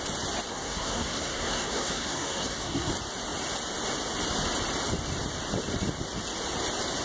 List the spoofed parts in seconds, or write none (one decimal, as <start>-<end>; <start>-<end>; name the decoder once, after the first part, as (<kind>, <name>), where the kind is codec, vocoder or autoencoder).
0.5-2.9 (codec, SNAC)